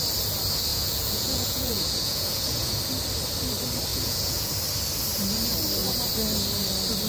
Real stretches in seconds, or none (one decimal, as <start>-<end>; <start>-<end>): 0.0-0.7; 2.8-3.9; 4.5-7.1

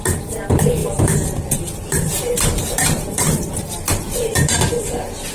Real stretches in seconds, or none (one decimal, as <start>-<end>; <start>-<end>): 4.3-5.3

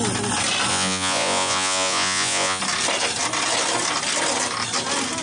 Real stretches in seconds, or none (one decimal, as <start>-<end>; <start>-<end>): 0.0-0.7; 2.6-5.2

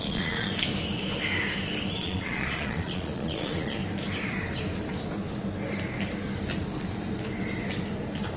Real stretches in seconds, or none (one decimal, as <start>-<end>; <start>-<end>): 0.5-2.0; 3.8-8.4

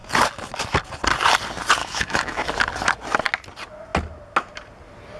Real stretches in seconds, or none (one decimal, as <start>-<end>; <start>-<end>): 0.0-1.8; 2.5-5.2

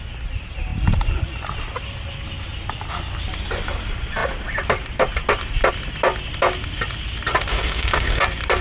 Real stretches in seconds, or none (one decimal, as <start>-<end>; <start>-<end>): 0.0-7.5; 8.2-8.6

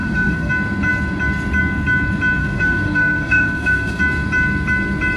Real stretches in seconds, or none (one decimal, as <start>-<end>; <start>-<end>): 0.5-2.4; 4.0-5.2